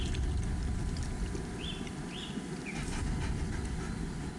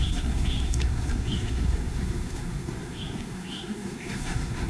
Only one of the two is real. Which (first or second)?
first